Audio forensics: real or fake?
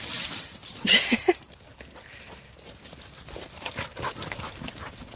real